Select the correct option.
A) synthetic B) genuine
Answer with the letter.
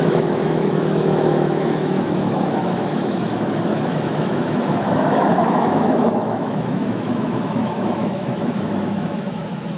A